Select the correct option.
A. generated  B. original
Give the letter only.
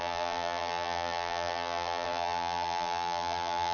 A